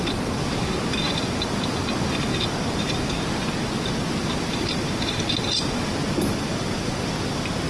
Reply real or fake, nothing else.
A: real